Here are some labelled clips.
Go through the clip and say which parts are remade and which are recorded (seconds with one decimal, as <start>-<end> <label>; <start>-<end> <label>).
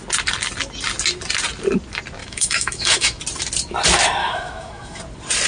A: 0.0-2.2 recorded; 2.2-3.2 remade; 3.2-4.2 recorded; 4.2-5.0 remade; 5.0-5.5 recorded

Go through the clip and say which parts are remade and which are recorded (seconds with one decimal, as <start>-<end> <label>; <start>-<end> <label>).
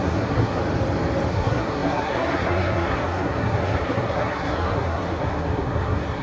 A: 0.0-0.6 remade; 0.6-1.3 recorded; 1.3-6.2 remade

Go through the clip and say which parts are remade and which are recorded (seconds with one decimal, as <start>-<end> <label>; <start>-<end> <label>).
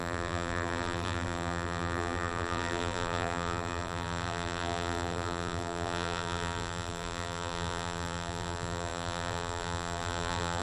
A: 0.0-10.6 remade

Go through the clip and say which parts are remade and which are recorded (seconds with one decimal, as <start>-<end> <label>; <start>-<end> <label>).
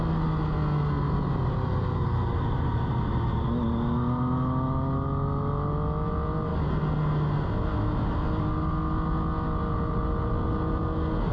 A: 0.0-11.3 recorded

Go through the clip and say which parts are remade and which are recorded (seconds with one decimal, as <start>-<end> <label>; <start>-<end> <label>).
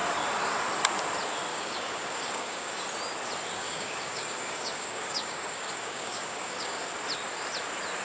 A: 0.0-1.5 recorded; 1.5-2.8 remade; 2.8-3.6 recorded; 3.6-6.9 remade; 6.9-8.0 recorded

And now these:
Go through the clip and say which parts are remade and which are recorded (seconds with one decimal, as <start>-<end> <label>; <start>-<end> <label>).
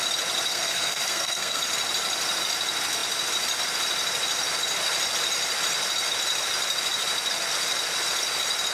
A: 0.0-0.5 recorded; 0.5-1.6 remade; 1.6-8.7 recorded